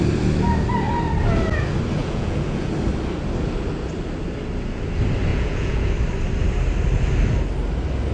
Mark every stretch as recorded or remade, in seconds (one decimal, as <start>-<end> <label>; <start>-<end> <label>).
0.0-2.0 recorded; 2.0-2.7 remade; 2.7-5.3 recorded; 5.3-5.9 remade; 5.9-8.1 recorded